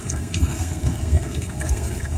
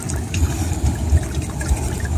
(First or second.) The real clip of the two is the second